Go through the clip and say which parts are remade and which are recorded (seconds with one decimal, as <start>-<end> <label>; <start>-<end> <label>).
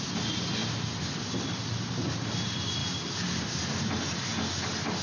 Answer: 0.0-5.0 recorded